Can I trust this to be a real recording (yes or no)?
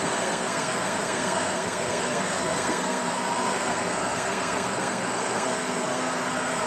no